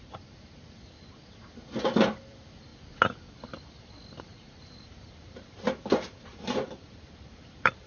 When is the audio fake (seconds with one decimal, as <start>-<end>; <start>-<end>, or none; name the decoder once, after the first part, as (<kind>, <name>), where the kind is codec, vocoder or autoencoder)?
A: 0.0-2.7 (vocoder, BigVGAN v2); 4.2-6.3; 7.0-7.9